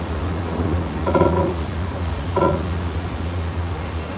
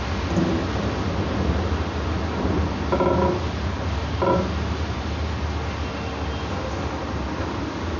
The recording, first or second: second